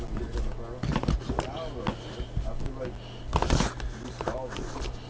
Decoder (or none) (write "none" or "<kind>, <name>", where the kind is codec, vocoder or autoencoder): none